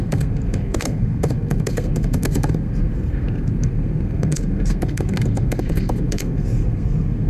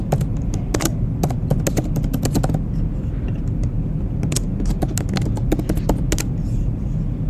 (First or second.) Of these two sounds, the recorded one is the second